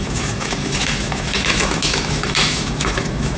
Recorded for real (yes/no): no